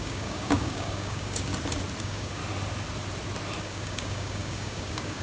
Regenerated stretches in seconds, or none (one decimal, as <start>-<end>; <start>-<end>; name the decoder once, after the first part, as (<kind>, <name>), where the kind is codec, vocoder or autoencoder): 0.0-1.5 (codec, DAC); 2.0-2.4; 3.6-5.2